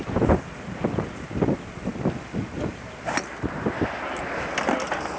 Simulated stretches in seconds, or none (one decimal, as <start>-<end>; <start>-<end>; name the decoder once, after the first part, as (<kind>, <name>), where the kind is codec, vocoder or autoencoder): none